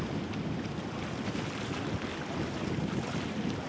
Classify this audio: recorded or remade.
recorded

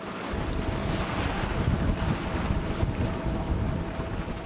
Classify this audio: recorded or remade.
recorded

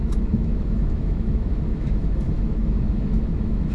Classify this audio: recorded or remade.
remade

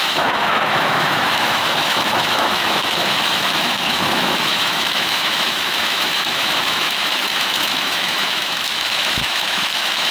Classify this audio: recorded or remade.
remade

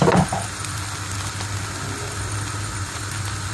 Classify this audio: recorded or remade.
recorded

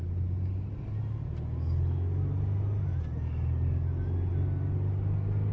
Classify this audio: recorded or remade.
recorded